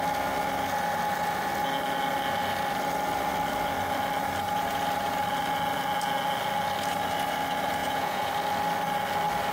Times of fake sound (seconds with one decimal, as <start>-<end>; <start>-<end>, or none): 7.8-8.3